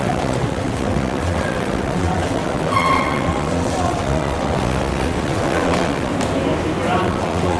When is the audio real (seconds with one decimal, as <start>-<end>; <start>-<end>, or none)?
6.1-7.0